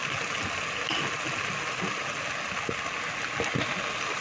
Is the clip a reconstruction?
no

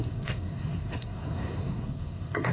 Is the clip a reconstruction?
yes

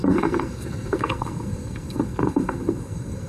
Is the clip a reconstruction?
yes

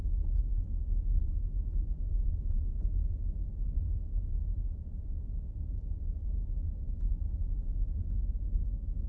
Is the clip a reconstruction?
no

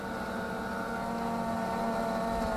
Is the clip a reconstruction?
no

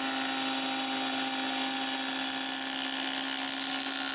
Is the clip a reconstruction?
no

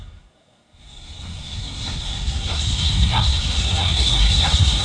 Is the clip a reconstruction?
yes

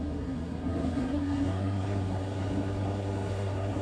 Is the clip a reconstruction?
yes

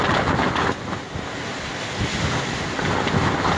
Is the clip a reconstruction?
no